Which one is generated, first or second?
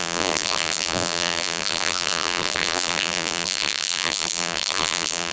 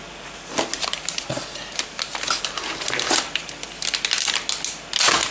first